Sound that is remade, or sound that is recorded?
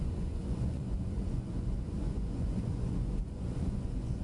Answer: remade